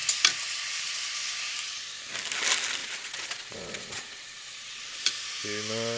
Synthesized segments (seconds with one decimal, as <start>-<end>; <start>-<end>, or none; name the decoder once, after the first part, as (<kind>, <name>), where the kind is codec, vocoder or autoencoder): 2.8-5.0 (vocoder, Vocos)

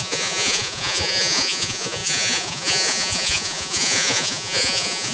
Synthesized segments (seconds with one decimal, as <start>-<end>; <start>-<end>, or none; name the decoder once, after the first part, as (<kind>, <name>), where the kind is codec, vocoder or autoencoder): 0.0-5.1 (vocoder, Vocos)

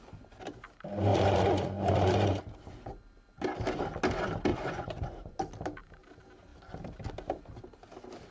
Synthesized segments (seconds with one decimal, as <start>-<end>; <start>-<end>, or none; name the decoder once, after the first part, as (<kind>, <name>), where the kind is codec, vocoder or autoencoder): 1.1-2.4 (vocoder, Vocos); 4.5-5.4

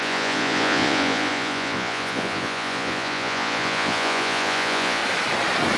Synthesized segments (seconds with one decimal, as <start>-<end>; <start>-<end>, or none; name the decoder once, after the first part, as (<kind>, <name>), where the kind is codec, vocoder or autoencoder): 0.0-5.0 (vocoder, Vocos)

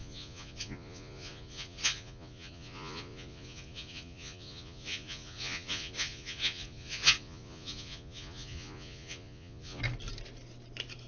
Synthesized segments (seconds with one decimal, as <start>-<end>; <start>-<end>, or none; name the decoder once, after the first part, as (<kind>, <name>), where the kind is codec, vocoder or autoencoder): 0.0-9.8 (vocoder, Vocos)

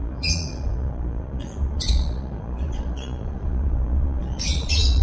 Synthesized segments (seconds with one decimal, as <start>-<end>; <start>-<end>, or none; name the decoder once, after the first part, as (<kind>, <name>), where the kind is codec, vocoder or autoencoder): 0.0-5.0 (vocoder, Vocos)

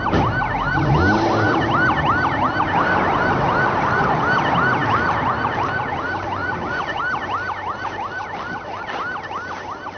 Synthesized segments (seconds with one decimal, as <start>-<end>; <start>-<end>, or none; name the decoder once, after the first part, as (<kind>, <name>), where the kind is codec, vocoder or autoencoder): 6.4-7.0 (vocoder, Vocos)

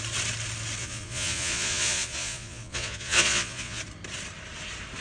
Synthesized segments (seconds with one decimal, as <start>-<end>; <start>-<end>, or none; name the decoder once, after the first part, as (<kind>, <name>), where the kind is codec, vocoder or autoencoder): 0.8-3.8 (vocoder, Vocos)